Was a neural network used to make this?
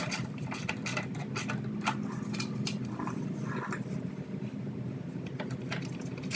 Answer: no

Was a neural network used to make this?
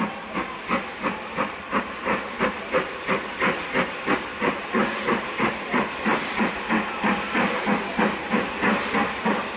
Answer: no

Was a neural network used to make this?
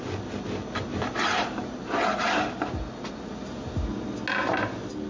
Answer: no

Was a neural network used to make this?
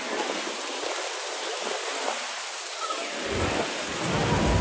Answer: no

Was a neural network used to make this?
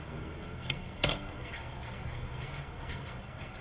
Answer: yes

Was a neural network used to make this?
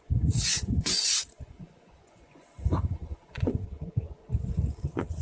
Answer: yes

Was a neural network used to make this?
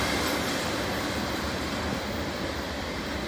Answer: yes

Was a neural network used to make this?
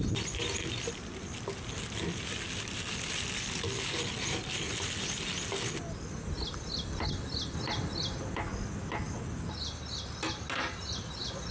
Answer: no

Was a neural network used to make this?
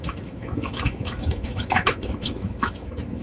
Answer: yes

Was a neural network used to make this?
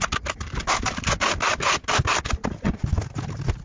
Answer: no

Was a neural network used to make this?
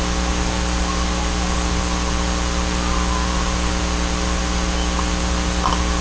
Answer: no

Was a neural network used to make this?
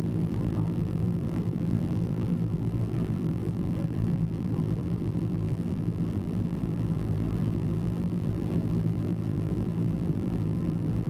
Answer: yes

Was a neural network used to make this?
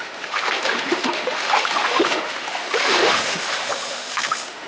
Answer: yes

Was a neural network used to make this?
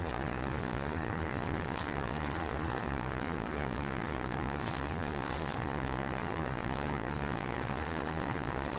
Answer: yes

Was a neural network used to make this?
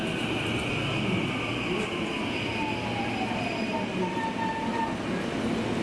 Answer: no